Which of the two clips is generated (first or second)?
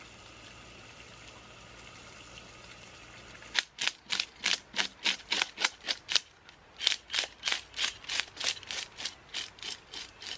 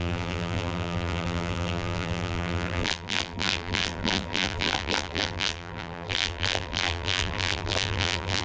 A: second